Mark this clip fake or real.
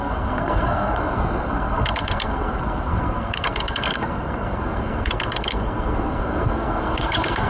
fake